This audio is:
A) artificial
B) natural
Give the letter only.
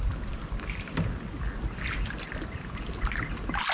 B